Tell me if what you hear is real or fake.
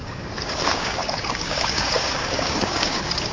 fake